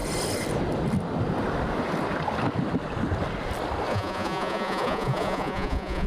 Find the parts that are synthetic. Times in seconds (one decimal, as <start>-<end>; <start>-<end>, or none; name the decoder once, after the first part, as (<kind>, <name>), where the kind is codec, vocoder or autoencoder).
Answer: 3.9-6.1 (vocoder, Vocos)